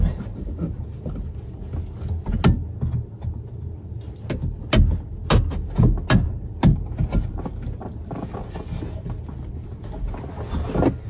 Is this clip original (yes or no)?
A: yes